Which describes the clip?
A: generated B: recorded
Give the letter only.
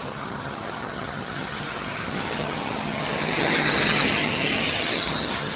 A